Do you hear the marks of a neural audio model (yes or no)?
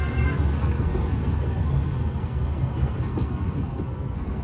yes